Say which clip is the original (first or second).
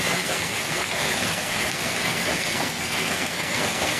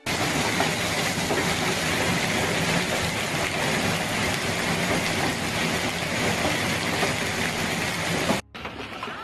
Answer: second